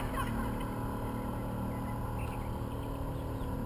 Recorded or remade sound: recorded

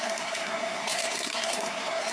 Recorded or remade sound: remade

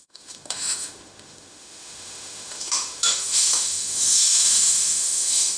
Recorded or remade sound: remade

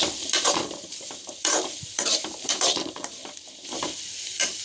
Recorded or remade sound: remade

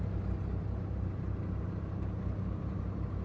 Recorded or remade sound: remade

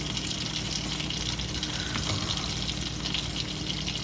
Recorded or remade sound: recorded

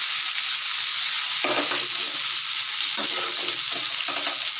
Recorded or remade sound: recorded